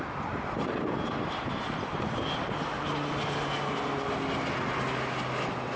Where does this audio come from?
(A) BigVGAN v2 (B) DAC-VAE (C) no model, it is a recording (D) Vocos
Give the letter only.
C